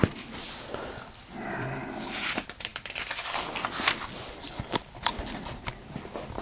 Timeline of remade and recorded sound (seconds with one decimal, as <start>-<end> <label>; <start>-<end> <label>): 0.0-6.4 recorded